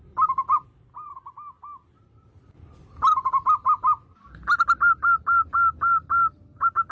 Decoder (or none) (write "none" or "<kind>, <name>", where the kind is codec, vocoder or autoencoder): none